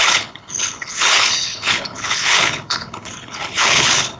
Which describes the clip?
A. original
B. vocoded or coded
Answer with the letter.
B